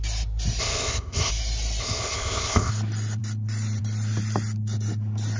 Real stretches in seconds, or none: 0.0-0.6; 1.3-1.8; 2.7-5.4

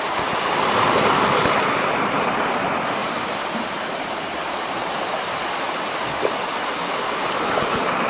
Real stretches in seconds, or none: 0.0-3.0; 5.4-8.1

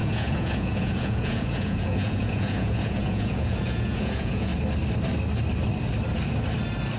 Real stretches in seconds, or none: 4.5-7.0

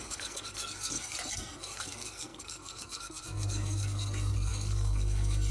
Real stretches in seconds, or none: none

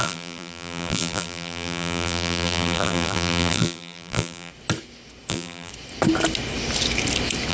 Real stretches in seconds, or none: 4.5-5.3; 5.7-7.5

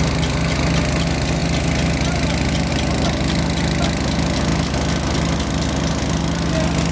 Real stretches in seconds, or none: 0.0-6.9

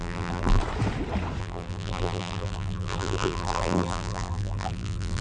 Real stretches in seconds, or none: 0.6-1.4

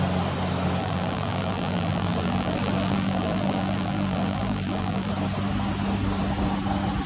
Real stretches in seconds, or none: 0.0-0.8; 5.1-7.1